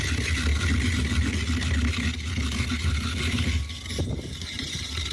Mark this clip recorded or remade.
recorded